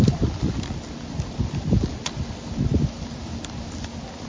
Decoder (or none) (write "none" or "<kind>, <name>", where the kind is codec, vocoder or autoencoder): none